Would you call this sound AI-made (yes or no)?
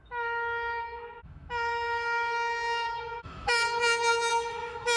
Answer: yes